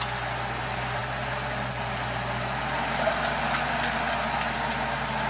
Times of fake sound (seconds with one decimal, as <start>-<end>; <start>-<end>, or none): none